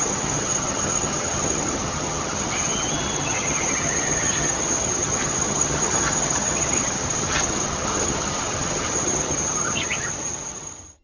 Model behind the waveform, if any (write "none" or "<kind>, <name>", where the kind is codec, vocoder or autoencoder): vocoder, HiFi-GAN